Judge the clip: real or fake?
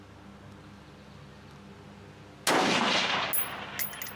real